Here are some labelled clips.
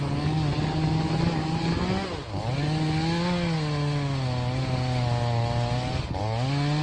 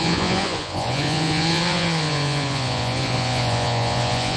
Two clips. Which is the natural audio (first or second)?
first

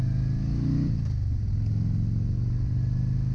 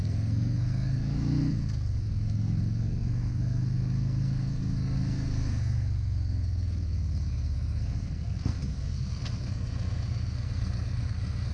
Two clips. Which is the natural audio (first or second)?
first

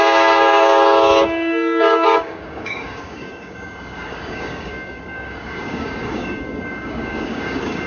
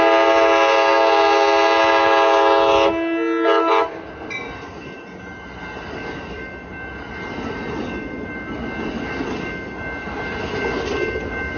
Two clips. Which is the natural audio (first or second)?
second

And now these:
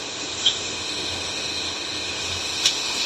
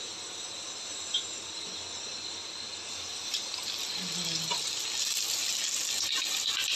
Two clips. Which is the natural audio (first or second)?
second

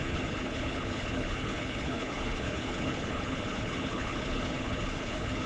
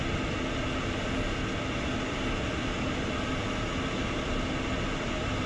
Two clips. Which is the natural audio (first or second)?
second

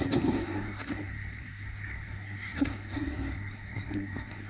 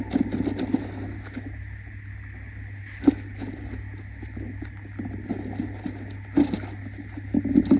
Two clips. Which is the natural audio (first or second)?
second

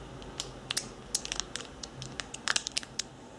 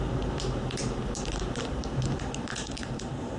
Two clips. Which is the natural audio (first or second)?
first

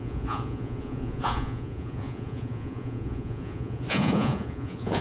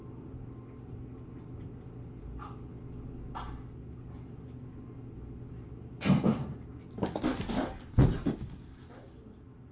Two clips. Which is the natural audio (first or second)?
second